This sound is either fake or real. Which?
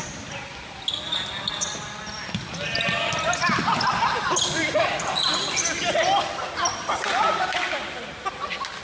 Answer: real